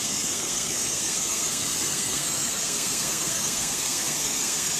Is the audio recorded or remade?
remade